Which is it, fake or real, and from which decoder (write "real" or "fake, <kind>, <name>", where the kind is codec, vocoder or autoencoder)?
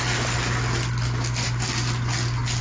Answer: real